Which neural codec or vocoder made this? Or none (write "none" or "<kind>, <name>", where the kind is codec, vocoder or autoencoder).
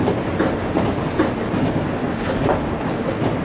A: none